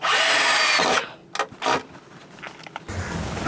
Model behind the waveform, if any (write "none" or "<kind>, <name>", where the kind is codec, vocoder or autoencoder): none